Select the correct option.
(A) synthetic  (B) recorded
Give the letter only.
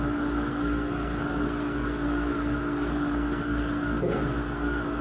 A